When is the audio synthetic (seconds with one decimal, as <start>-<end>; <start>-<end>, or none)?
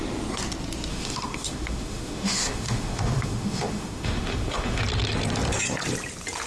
0.9-4.8